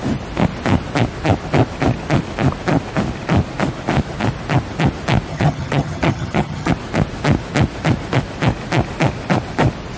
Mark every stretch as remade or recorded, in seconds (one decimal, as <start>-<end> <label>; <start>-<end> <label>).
0.0-5.3 recorded; 5.3-6.7 remade; 6.7-10.0 recorded